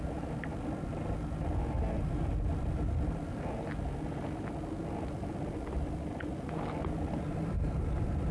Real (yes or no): yes